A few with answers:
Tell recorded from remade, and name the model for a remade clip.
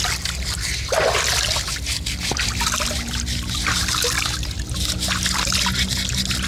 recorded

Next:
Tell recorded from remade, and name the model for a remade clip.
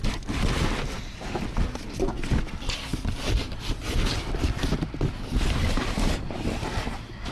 recorded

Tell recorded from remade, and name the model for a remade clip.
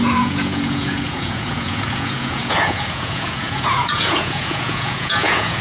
remade, vocoder, Vocos